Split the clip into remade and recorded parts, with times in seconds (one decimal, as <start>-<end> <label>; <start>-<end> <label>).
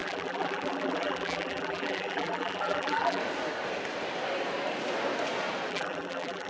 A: 0.0-3.2 remade; 3.2-5.7 recorded; 5.7-6.5 remade